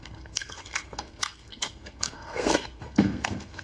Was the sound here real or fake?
fake